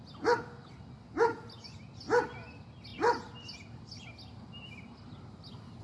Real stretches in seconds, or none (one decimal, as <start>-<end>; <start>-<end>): 0.0-5.8

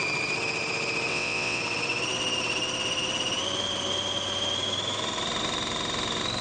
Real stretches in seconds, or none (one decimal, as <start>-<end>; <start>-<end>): 0.0-1.1; 1.6-6.4

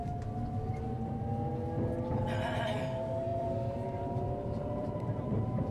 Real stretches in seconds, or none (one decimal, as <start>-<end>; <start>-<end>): 0.0-3.3